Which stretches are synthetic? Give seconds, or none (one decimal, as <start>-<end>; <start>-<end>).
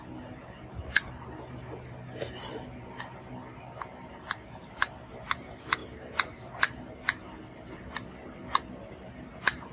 none